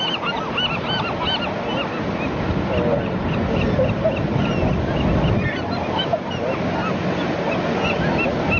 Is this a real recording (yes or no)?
yes